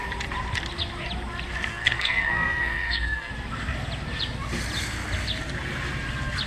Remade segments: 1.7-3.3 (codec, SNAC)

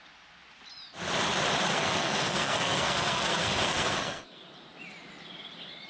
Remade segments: 1.7-4.4 (codec, SNAC)

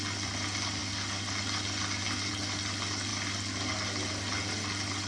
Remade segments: none

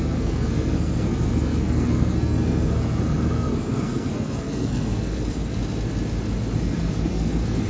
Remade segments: 0.0-5.6 (codec, SNAC); 6.6-7.7

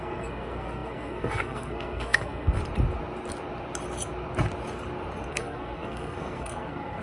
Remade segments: 0.0-2.6 (codec, SNAC); 5.3-7.0